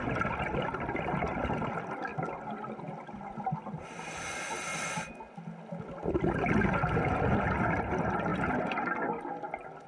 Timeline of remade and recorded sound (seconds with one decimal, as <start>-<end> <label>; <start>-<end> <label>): 0.0-9.9 recorded